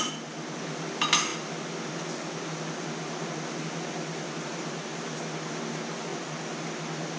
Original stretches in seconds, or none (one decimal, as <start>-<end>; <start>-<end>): 0.0-7.2